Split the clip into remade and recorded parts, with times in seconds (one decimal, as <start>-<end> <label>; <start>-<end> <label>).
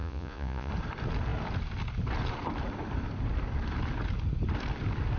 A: 0.0-0.7 remade; 0.7-5.2 recorded